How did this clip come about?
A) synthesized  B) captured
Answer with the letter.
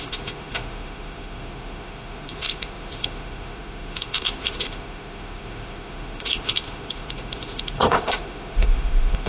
A